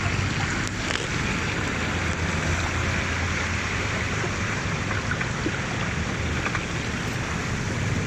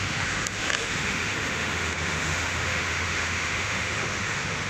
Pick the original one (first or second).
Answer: first